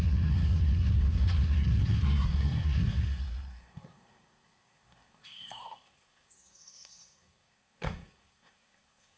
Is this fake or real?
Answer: fake